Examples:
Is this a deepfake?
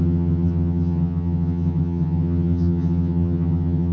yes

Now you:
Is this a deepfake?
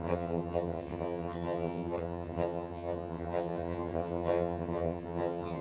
yes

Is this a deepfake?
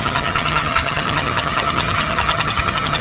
yes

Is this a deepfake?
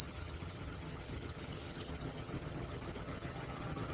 yes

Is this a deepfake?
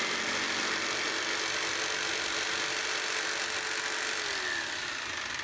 no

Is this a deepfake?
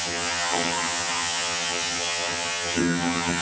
yes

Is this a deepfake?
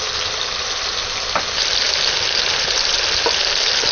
no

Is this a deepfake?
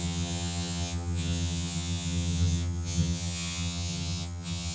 yes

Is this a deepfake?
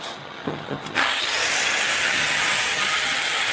yes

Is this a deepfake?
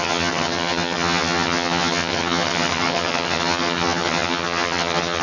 yes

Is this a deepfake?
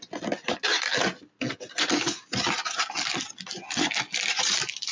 no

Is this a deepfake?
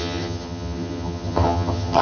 yes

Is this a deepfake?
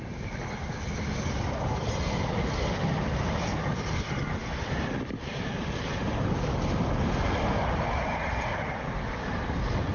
no